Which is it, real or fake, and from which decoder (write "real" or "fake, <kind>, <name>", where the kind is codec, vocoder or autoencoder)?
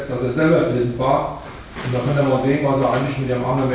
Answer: real